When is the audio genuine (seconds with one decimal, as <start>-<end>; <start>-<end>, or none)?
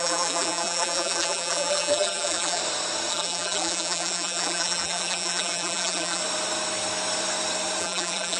2.6-3.1; 6.2-7.8